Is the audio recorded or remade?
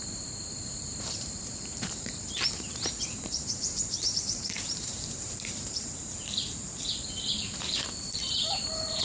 remade